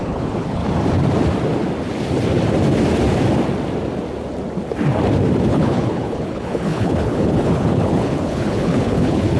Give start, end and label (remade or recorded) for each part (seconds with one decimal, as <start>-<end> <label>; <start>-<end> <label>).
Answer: 0.0-0.6 remade; 0.6-5.5 recorded; 5.5-9.4 remade

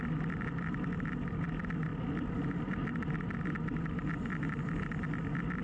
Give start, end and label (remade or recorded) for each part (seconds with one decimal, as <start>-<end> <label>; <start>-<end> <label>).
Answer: 0.0-5.6 recorded

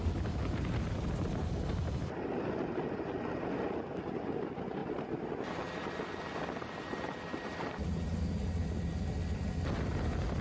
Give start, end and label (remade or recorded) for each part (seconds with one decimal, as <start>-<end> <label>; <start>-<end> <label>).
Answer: 0.0-10.4 recorded